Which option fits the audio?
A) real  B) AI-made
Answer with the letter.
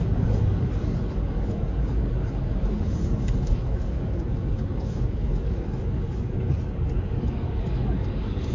B